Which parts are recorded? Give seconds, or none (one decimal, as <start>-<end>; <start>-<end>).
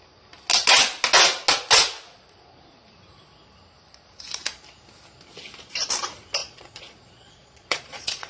0.0-6.4